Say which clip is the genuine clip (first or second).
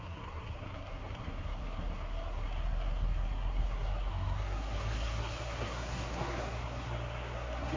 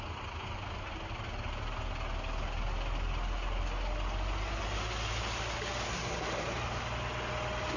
second